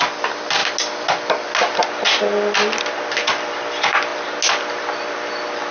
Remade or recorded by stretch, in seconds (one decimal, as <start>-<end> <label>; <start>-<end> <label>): 0.0-5.7 recorded